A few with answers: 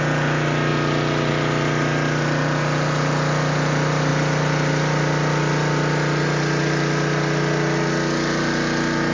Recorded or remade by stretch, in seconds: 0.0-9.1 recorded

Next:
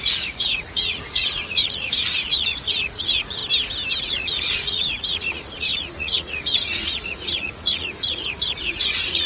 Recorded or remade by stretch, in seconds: 0.0-3.4 remade; 3.4-4.0 recorded; 4.0-9.3 remade

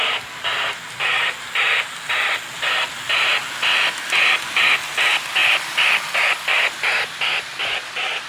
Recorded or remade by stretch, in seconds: 0.0-8.3 recorded

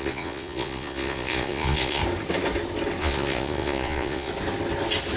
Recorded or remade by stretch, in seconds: 0.0-2.0 remade; 2.0-3.0 recorded; 3.0-4.3 remade; 4.3-5.2 recorded

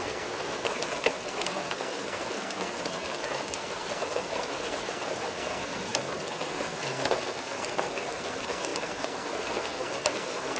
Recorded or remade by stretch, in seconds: 0.0-10.6 remade

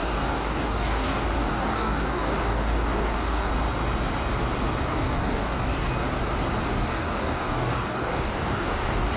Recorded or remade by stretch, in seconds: 0.0-3.5 remade; 3.5-4.9 recorded; 4.9-5.9 remade; 5.9-6.7 recorded; 6.7-9.2 remade

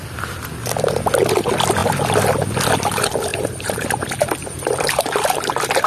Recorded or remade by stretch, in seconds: 0.0-3.3 recorded; 3.3-4.0 remade; 4.0-4.4 recorded; 4.4-5.9 remade

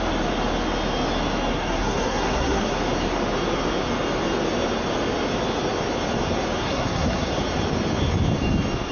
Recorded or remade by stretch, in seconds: 0.0-1.5 recorded; 1.5-2.8 remade; 2.8-6.6 recorded; 6.6-7.4 remade; 7.4-8.9 recorded